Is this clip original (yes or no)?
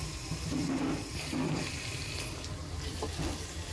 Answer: yes